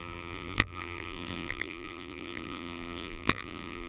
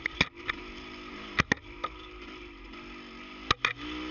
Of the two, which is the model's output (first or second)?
first